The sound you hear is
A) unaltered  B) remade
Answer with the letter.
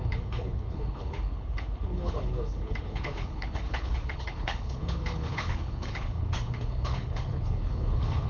B